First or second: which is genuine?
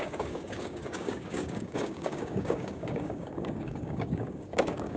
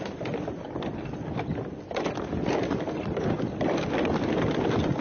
second